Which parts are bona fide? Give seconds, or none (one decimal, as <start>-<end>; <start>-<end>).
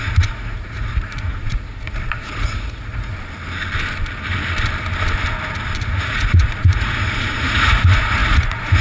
3.1-5.8